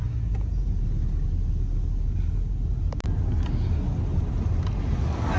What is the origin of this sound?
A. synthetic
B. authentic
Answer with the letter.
B